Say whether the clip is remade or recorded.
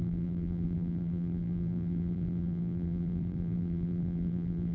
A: remade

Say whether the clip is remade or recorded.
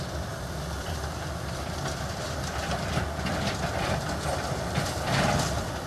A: remade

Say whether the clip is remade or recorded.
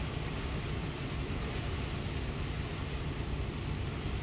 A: remade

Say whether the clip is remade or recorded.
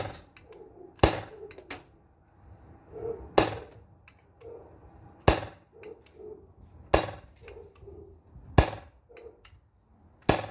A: recorded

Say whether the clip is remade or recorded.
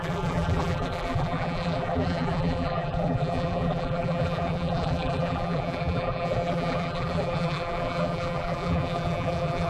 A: remade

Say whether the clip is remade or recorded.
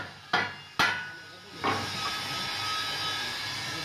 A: recorded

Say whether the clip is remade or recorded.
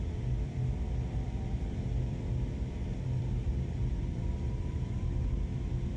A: remade